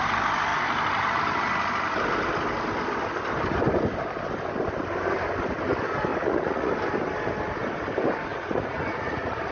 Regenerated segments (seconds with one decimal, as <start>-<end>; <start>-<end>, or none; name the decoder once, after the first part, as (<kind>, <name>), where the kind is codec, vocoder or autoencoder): 6.1-6.7 (vocoder, Vocos); 8.3-9.5